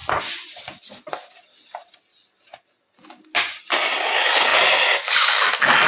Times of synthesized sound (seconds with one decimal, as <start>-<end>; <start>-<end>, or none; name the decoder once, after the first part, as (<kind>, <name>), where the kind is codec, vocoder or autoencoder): none